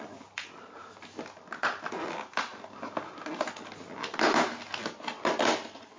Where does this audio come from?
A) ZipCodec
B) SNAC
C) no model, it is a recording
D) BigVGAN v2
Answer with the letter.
C